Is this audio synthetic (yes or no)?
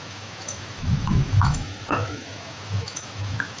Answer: yes